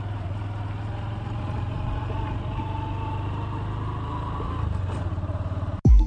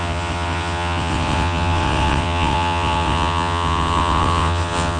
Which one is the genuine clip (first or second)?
first